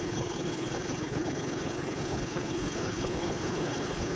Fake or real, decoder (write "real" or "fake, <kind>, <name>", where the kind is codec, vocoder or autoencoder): fake, codec, HILCodec